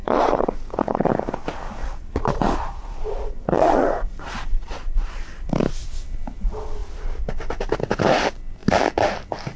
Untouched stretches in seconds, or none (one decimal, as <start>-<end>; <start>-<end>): 1.1-1.8; 5.2-9.6